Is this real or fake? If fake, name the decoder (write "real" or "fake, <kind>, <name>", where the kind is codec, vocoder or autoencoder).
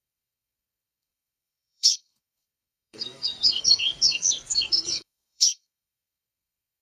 fake, codec, SNAC